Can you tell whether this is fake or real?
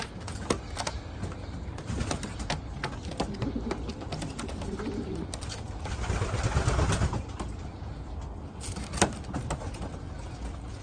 real